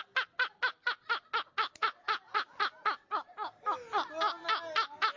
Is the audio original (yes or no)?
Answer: yes